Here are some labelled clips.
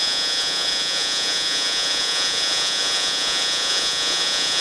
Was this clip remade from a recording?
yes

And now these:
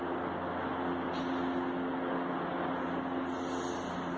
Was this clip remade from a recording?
no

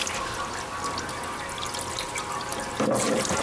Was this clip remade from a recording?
no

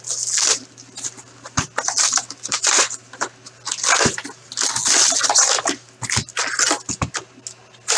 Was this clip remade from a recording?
no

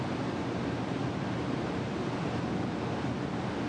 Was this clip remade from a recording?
no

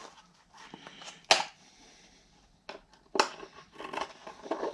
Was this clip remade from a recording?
no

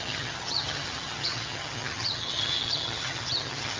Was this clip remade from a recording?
yes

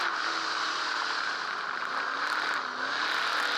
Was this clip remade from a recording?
no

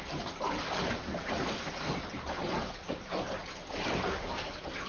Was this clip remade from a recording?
no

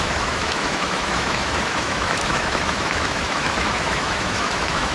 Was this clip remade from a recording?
yes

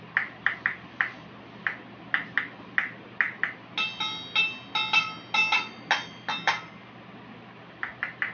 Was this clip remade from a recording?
no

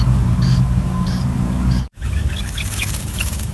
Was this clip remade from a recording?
yes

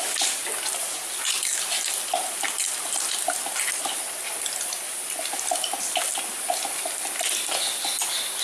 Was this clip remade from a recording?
no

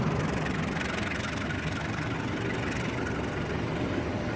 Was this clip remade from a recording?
no